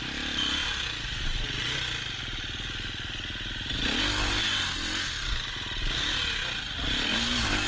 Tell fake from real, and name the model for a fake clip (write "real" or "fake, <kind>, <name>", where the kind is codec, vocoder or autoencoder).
real